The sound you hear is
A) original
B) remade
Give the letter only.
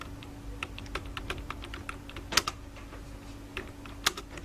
A